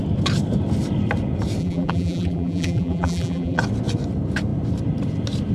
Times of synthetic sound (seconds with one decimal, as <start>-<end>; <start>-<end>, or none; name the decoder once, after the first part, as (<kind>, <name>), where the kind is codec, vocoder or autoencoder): 1.6-3.6 (vocoder, BigVGAN v2)